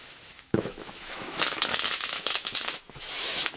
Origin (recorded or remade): remade